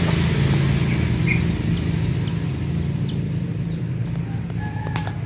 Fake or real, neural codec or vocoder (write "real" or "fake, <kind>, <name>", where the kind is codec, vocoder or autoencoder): real